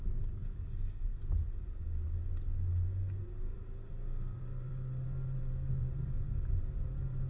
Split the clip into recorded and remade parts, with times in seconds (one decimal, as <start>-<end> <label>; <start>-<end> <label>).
0.0-7.3 recorded